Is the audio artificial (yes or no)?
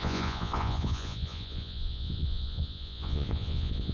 yes